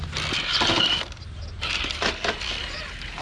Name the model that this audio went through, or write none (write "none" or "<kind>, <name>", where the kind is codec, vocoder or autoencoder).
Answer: none